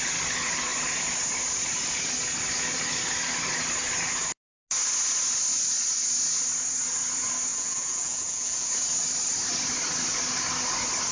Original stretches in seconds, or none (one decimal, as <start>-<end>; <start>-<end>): 0.0-7.5; 8.7-11.1